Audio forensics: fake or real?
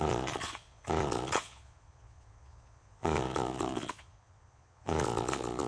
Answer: fake